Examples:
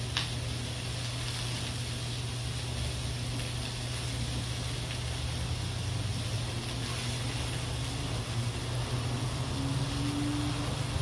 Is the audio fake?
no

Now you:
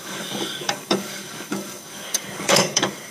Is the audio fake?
yes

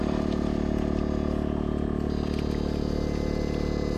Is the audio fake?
no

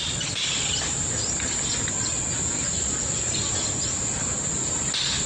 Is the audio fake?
no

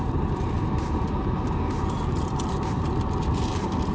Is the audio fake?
yes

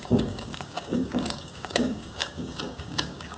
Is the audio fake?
yes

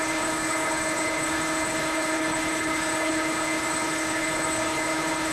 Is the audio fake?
yes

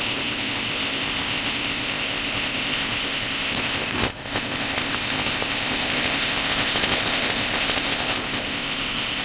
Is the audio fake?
yes